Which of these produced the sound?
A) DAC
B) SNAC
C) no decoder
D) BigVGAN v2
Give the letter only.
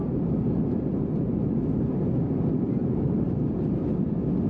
C